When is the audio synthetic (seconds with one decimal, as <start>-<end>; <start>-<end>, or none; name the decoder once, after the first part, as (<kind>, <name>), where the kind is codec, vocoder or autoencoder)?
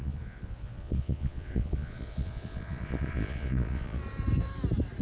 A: 0.0-4.0 (vocoder, Vocos)